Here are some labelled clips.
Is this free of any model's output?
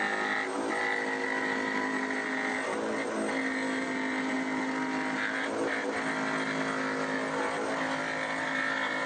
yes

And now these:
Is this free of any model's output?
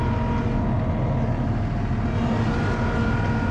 yes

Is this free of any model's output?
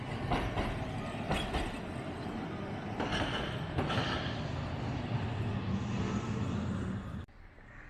yes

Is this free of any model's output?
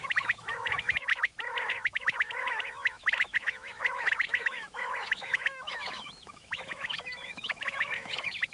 no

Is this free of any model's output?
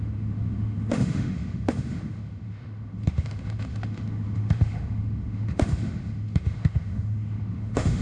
no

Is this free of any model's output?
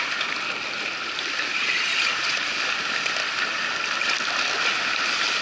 yes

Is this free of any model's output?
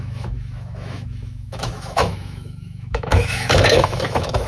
no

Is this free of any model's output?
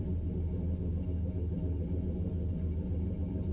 yes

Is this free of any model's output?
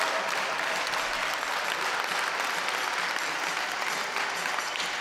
yes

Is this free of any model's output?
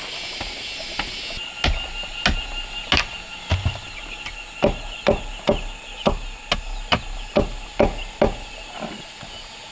yes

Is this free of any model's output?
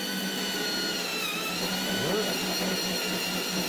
yes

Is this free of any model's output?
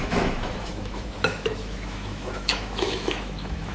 no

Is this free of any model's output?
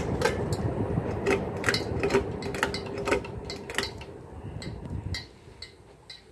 yes